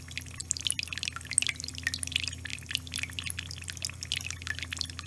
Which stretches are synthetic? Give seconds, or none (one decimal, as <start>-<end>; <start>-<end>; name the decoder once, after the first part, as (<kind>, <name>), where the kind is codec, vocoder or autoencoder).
none